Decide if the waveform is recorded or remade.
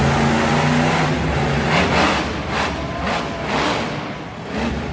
recorded